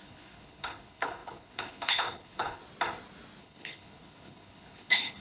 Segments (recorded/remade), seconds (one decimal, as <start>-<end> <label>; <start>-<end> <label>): 0.0-2.6 remade; 2.6-3.4 recorded; 3.4-5.2 remade